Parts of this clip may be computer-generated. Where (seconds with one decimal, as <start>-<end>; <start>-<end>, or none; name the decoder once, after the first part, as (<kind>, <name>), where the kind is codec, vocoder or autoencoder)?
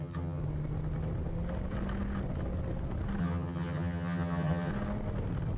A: 0.0-0.4 (vocoder, HiFi-GAN); 3.2-4.7